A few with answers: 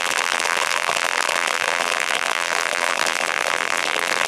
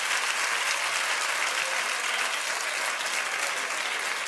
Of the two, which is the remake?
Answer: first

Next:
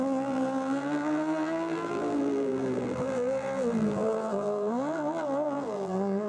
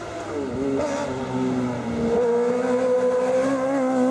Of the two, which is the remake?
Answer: first